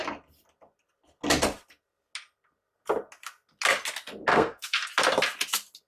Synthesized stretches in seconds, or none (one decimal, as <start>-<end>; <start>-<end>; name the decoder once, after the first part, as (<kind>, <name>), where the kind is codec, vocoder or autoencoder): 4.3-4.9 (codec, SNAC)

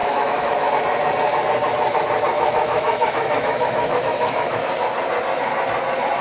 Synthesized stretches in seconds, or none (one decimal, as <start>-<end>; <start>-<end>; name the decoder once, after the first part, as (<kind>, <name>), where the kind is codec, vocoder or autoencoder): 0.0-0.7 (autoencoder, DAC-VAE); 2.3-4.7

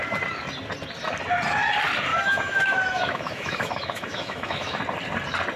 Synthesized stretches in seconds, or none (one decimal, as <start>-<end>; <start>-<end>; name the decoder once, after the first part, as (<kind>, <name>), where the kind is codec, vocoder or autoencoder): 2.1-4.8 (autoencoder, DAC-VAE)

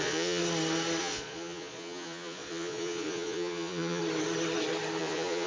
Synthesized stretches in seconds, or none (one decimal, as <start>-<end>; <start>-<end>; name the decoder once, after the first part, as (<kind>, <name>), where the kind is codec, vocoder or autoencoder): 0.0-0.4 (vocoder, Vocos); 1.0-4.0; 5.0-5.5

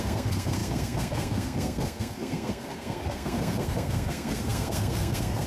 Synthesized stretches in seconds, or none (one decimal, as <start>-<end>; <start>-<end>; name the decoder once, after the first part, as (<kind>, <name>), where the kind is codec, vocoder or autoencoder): 0.0-5.5 (codec, SNAC)